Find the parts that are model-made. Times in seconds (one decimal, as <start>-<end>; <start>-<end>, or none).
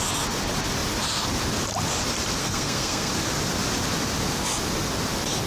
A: 2.4-3.1